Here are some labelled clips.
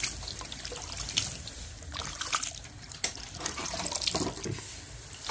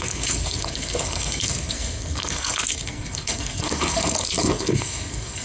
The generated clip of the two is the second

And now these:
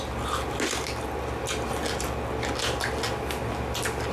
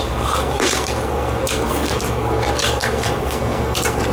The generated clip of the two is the second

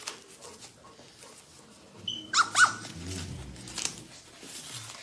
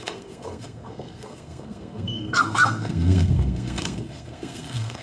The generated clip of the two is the second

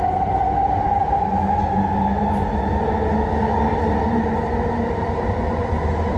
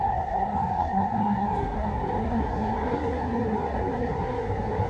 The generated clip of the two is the second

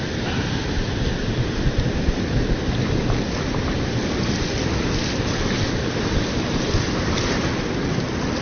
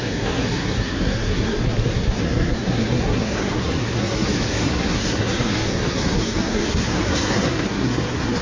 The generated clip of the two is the second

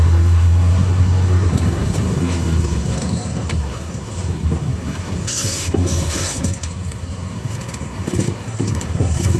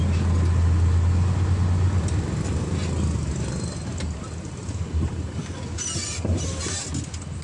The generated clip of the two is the first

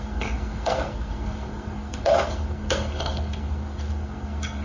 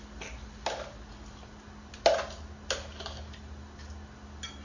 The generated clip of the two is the first